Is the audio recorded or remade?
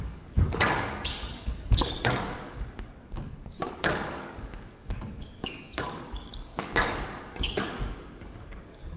remade